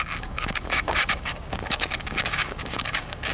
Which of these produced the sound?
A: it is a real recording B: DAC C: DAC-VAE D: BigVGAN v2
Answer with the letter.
B